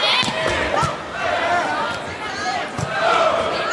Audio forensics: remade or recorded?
recorded